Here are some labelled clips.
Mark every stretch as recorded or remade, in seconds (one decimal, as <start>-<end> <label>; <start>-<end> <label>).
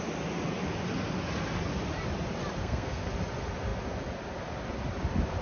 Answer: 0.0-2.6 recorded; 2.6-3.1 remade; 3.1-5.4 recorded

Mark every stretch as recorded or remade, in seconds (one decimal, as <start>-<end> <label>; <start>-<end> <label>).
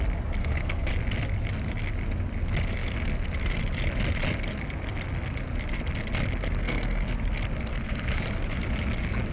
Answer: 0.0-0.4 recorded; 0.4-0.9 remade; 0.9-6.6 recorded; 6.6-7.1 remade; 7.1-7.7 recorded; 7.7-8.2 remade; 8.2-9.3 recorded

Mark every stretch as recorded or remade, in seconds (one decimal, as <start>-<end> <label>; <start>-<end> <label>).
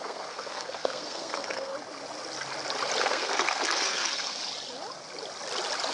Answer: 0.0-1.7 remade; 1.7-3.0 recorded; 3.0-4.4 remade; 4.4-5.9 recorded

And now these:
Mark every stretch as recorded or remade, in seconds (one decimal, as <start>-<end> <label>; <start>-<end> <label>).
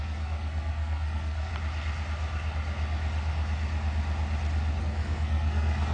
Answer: 0.0-1.5 remade; 1.5-4.8 recorded; 4.8-5.9 remade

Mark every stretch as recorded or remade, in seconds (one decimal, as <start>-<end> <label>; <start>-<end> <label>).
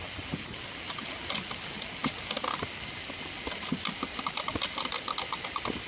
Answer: 0.0-5.9 recorded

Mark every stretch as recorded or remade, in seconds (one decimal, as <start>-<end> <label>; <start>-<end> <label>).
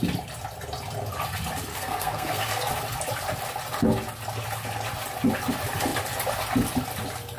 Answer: 0.0-1.7 recorded; 1.7-2.7 remade; 2.7-7.4 recorded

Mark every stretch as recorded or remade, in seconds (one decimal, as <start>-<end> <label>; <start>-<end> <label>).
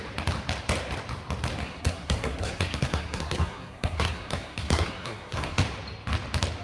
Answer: 0.0-1.6 recorded; 1.6-5.6 remade; 5.6-6.6 recorded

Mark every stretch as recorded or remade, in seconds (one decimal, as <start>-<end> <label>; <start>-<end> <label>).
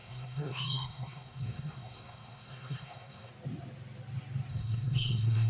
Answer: 0.0-3.3 remade; 3.3-4.5 recorded; 4.5-5.5 remade